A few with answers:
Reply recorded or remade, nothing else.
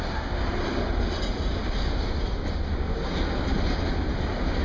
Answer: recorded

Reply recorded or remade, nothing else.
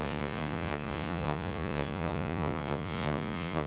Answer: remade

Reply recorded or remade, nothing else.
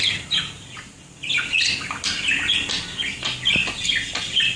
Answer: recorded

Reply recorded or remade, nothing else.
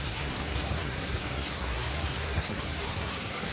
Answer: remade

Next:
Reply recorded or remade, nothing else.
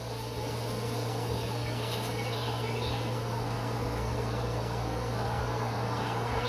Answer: remade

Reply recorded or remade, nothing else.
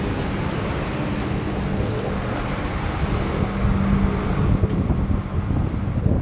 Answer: recorded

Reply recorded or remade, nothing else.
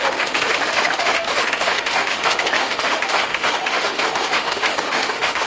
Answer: remade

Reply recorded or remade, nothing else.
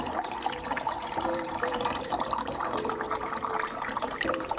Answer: remade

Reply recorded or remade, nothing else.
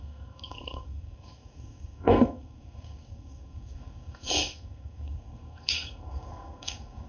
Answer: remade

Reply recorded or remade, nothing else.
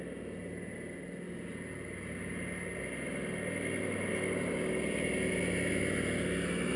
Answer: recorded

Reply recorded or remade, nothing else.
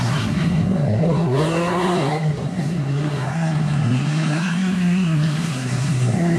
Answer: remade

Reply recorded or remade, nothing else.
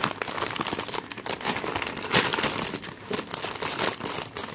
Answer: recorded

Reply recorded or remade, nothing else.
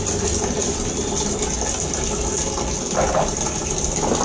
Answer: recorded